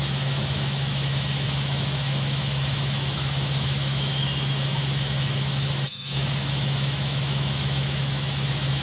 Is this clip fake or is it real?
fake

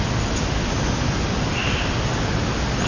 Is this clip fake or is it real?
real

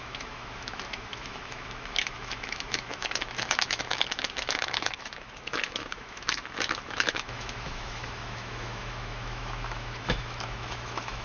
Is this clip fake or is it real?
fake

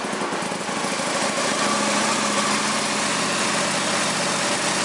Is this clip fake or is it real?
real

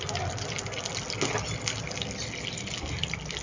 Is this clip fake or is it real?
real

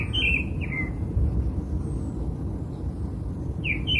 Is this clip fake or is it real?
real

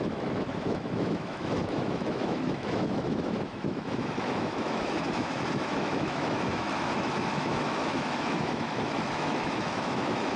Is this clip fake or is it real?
fake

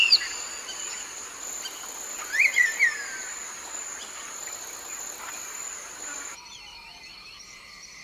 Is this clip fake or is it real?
real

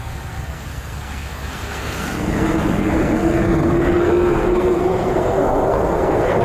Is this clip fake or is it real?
fake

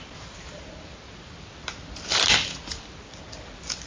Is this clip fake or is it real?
real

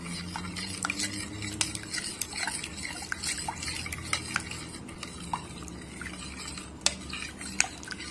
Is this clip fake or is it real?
real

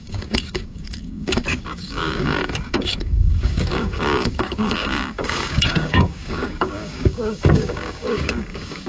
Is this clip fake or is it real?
fake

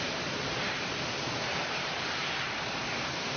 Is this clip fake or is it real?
fake